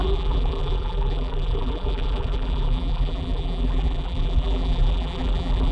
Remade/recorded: remade